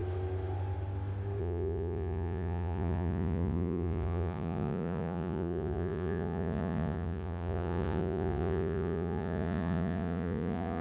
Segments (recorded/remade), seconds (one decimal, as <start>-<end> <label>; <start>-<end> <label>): 0.0-1.4 recorded; 1.4-10.8 remade